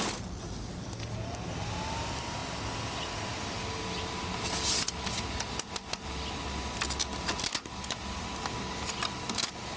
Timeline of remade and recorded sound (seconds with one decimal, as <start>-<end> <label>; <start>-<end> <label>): 0.0-9.8 recorded